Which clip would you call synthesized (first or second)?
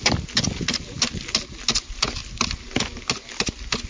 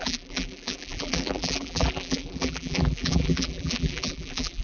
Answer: second